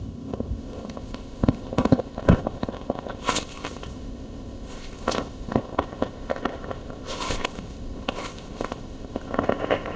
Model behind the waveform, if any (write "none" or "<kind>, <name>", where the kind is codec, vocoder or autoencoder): codec, ZipCodec